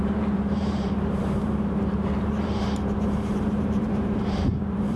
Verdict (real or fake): fake